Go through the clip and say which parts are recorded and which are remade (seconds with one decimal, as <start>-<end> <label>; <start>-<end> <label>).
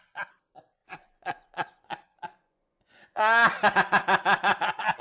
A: 0.0-0.8 recorded; 0.8-3.2 remade; 3.2-5.0 recorded